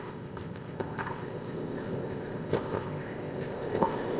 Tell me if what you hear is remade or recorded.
remade